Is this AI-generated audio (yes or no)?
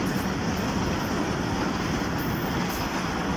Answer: no